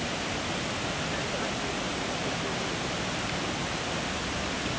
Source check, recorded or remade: recorded